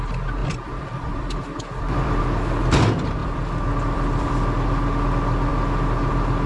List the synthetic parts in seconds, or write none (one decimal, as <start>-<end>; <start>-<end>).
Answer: 0.4-2.2; 3.2-4.3